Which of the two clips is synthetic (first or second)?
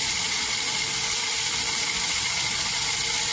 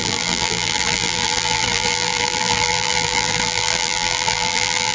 second